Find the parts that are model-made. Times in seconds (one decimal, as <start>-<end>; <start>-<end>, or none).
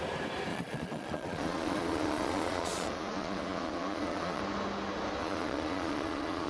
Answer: 0.5-4.4; 5.2-6.5